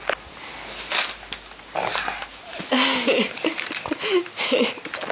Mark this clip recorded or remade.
recorded